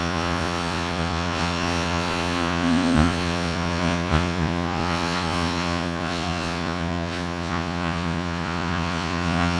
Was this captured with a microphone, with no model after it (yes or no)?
no